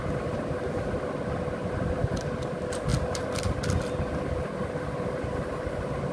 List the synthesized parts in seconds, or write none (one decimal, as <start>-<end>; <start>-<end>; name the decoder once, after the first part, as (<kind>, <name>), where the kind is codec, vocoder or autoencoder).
none